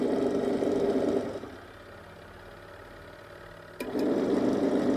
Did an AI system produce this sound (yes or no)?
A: no